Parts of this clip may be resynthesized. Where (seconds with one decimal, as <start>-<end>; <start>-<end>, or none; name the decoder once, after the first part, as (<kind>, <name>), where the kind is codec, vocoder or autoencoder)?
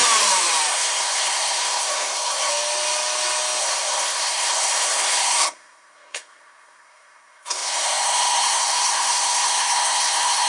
0.7-2.5 (codec, SNAC); 3.6-10.5